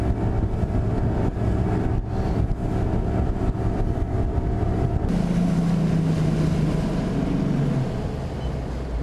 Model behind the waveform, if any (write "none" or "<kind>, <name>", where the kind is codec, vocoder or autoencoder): none